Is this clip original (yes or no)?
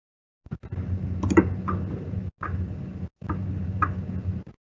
yes